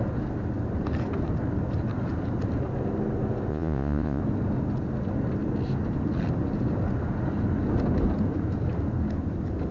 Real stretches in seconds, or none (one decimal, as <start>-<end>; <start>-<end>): 0.0-3.5; 4.2-9.7